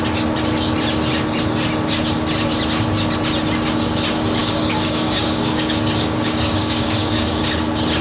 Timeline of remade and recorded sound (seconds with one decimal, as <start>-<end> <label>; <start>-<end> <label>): 0.0-4.4 recorded; 4.4-7.4 remade; 7.4-8.0 recorded